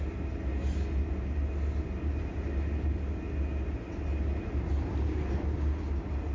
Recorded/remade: recorded